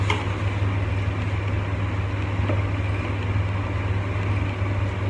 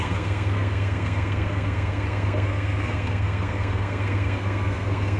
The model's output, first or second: second